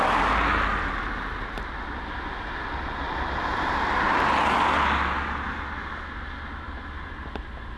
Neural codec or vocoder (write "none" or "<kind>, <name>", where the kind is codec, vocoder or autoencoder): none